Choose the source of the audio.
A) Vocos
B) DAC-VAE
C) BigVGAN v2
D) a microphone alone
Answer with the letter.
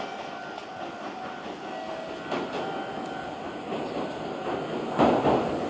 D